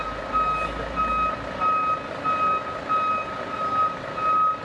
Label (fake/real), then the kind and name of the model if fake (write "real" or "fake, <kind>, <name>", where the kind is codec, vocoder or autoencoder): real